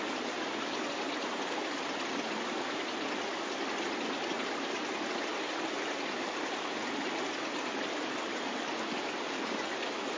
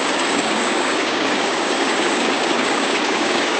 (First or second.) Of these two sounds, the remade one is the second